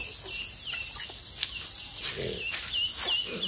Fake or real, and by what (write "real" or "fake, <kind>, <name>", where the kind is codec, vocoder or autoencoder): real